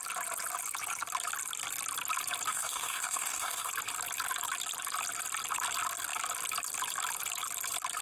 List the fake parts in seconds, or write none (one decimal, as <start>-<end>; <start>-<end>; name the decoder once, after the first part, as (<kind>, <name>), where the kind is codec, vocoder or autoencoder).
2.5-3.7 (codec, DAC)